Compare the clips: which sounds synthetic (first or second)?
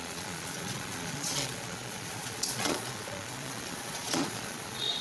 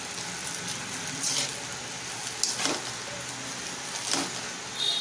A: first